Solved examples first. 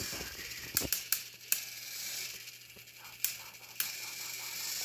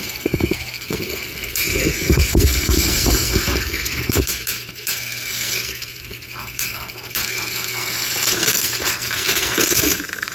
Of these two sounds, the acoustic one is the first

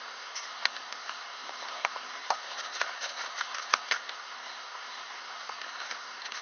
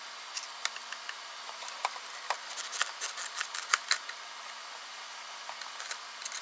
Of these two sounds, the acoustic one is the second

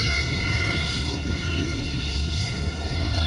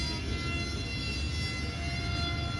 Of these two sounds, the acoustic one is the second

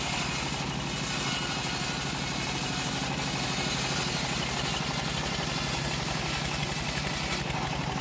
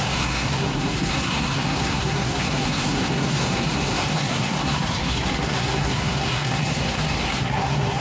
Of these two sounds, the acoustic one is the first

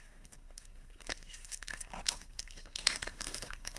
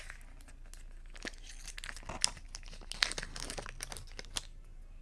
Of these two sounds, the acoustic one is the second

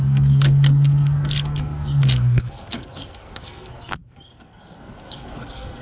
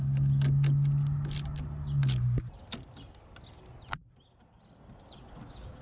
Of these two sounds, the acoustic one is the second